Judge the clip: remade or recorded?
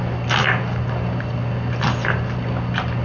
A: recorded